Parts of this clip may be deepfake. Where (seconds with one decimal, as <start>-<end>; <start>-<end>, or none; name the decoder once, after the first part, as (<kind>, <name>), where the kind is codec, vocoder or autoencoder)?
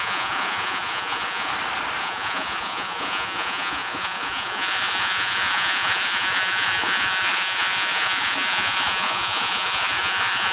0.0-1.5 (vocoder, Vocos); 2.0-10.5